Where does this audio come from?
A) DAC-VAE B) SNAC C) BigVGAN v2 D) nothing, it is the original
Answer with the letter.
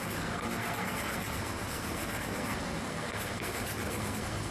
B